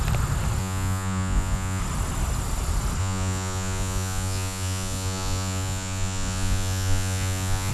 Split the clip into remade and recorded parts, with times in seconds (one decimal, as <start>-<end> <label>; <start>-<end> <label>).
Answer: 0.0-0.6 recorded; 0.6-1.8 remade; 1.8-3.0 recorded; 3.0-7.7 remade